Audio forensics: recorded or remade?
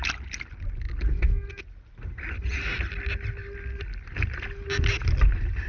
recorded